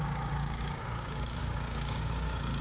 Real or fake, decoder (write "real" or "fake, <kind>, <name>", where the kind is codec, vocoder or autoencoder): fake, codec, DAC